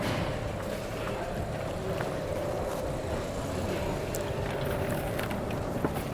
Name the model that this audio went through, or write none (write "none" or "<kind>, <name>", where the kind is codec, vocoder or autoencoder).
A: none